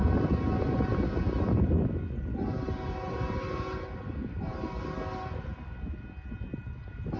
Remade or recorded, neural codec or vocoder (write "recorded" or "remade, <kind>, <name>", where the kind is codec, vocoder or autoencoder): recorded